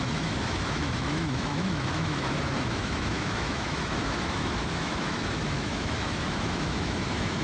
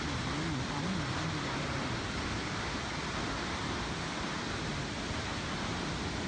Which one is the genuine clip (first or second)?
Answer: second